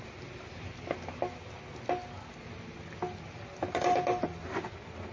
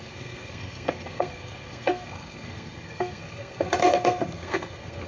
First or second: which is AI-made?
second